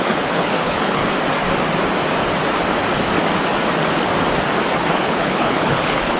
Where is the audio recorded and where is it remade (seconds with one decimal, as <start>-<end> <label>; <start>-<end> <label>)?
0.0-1.0 remade; 1.0-4.7 recorded; 4.7-6.2 remade